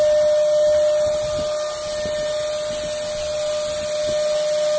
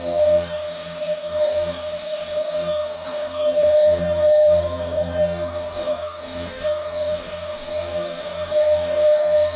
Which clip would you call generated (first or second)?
second